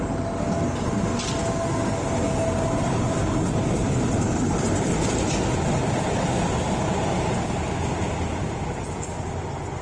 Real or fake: real